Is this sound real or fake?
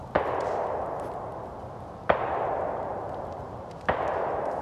real